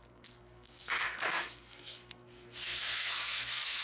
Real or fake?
fake